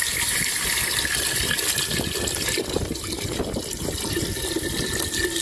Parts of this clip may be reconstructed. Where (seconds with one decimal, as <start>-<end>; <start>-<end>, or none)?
none